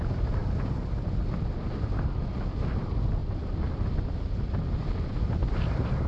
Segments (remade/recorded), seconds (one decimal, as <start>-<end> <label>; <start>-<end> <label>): 0.0-6.1 recorded